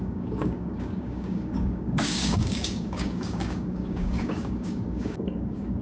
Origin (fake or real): fake